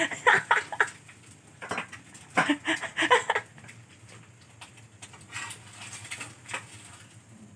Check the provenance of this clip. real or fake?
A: real